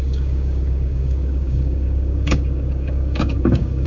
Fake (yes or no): yes